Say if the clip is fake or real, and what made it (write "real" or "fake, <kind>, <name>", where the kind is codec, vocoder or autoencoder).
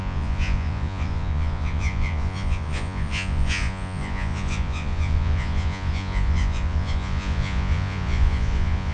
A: fake, vocoder, Vocos